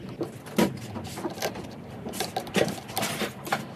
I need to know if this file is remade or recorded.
recorded